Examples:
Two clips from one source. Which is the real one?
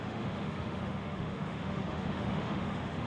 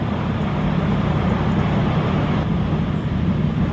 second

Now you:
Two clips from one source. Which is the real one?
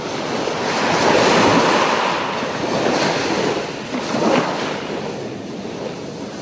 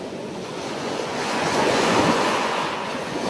first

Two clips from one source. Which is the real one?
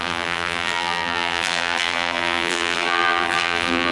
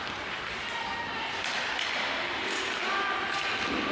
second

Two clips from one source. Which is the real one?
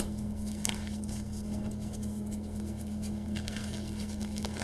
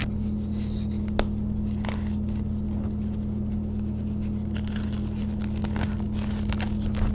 second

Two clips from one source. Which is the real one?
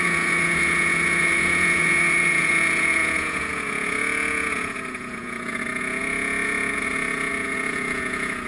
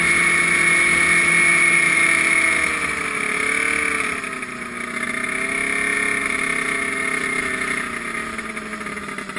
second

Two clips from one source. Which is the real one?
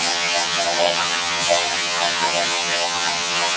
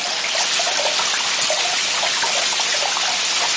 second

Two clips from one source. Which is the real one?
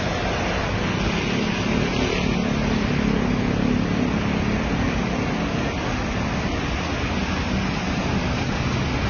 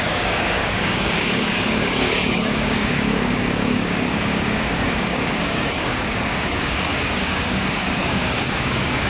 first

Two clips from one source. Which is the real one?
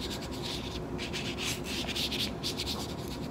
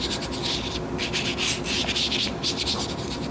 second